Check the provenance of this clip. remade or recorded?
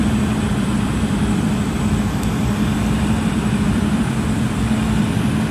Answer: remade